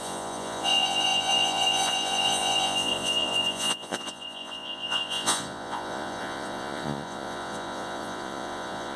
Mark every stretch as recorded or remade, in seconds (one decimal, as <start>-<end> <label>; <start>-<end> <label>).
0.0-9.0 remade